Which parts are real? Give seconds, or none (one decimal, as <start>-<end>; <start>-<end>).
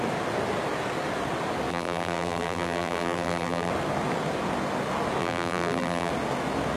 0.0-1.7; 3.7-5.2; 6.1-6.8